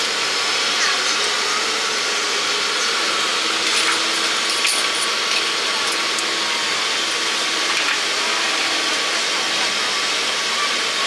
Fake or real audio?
real